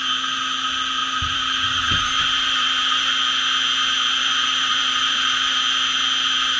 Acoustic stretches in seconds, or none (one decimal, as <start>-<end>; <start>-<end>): 0.0-1.0; 3.1-4.2; 5.6-6.6